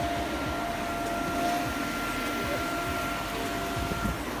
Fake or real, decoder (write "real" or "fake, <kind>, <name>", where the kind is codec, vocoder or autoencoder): real